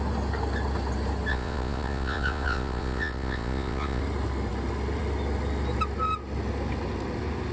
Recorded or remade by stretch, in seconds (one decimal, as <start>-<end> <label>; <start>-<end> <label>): 0.0-1.3 recorded; 1.3-4.0 remade; 4.0-7.5 recorded